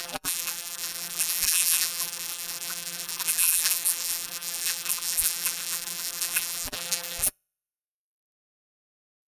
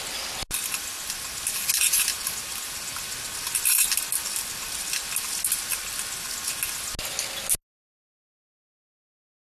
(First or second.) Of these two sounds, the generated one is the first